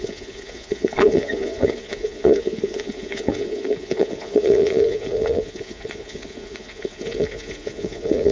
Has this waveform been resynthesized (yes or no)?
yes